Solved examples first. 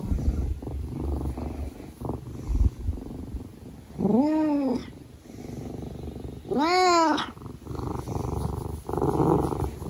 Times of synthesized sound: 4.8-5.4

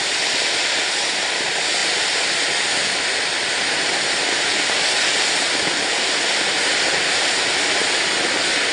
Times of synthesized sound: 1.8-2.4

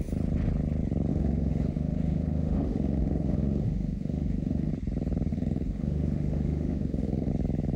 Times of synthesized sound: 1.1-4.7; 5.3-7.3

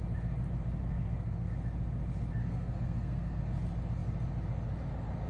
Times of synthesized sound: 0.8-1.5; 2.4-3.4